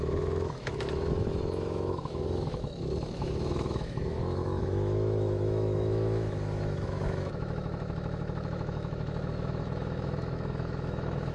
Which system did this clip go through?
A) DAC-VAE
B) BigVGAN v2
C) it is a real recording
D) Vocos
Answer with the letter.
A